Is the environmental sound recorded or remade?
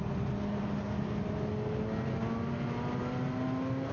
recorded